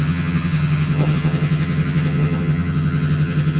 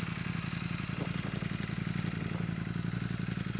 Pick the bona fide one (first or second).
second